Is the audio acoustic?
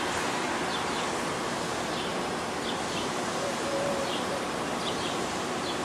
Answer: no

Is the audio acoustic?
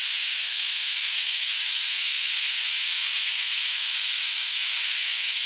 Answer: no